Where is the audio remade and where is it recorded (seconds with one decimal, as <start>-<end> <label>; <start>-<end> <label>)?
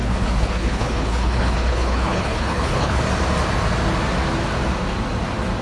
0.0-3.0 remade; 3.0-5.6 recorded